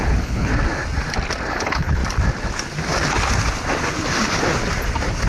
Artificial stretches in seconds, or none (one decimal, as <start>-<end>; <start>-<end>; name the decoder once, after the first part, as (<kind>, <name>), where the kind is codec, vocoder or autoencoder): 0.0-0.5 (codec, HILCodec); 1.5-2.0